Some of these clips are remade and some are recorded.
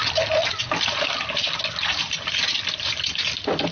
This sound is recorded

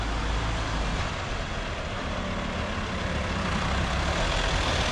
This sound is recorded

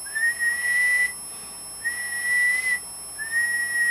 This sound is recorded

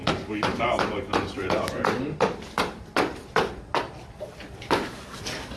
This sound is remade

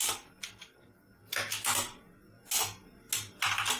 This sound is recorded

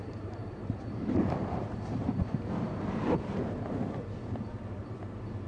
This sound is remade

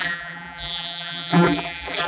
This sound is remade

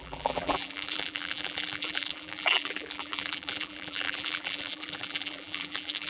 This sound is remade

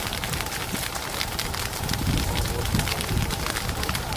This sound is remade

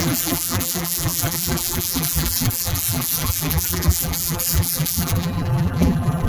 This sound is remade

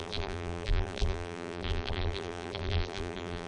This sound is remade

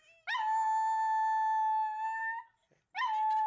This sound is recorded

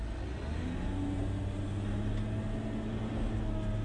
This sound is recorded